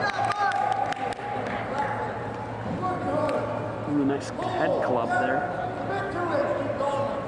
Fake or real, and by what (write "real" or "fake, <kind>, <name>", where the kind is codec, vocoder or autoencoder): real